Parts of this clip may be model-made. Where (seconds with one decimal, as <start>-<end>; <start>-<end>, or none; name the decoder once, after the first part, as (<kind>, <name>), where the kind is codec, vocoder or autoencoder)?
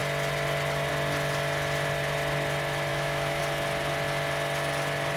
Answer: 2.9-3.4 (autoencoder, DAC-VAE)